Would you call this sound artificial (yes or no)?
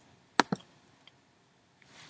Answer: no